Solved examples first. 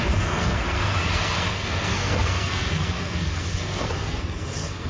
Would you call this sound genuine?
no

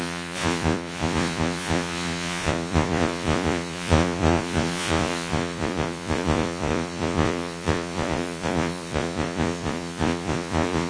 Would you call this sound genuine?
no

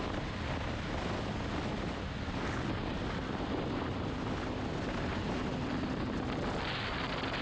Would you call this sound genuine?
yes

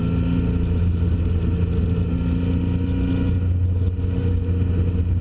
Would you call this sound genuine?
yes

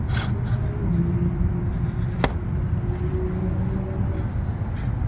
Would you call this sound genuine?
yes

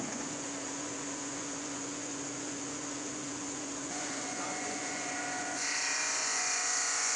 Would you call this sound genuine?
no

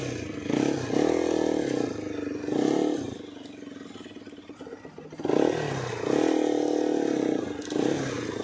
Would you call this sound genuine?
yes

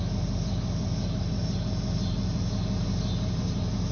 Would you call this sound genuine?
yes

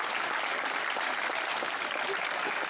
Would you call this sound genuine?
yes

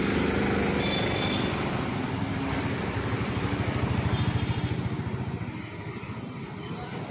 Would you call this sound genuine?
yes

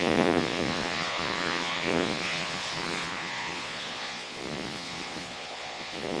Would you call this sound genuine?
no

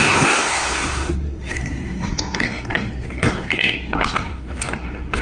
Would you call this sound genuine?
no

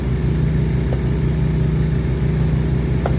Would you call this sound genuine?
yes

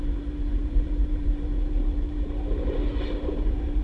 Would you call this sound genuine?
no